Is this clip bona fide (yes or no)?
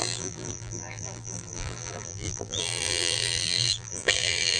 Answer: no